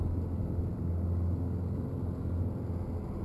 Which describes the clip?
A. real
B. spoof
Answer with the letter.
A